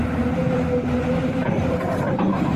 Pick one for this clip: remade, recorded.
remade